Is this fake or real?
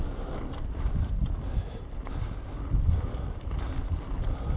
real